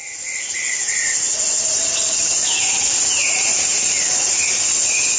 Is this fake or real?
fake